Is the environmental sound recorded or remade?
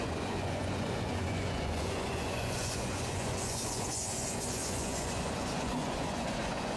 remade